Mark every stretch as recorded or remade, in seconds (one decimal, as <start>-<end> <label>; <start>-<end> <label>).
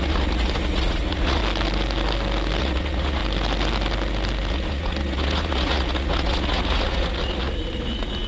0.0-1.4 remade; 1.4-2.6 recorded; 2.6-3.2 remade; 3.2-4.5 recorded; 4.5-8.3 remade